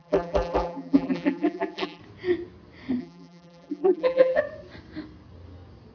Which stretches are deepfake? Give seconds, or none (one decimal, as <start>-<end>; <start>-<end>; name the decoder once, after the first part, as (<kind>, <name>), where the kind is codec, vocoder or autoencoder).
0.0-2.0 (vocoder, BigVGAN v2); 3.0-4.4